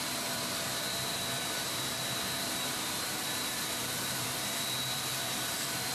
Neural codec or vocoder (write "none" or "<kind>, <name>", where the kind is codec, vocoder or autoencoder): vocoder, BigVGAN v2